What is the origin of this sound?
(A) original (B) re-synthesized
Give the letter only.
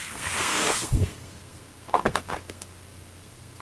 B